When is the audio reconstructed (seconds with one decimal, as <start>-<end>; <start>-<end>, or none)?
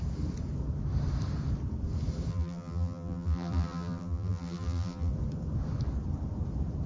2.3-5.1